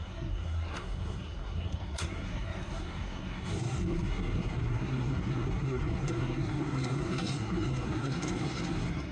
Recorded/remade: remade